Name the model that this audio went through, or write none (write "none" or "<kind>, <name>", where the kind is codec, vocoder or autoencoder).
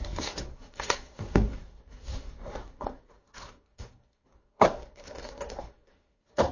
codec, SNAC